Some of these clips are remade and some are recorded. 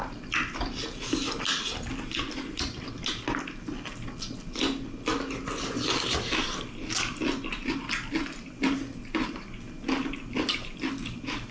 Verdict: recorded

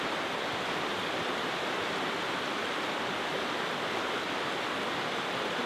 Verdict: recorded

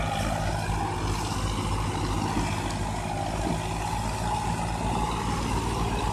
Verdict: recorded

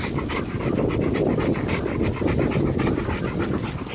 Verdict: recorded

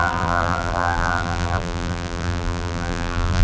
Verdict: remade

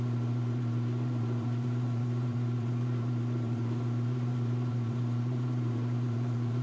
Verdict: remade